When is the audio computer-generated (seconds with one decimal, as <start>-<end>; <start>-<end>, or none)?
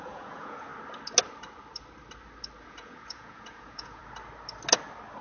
0.0-0.7; 2.6-4.0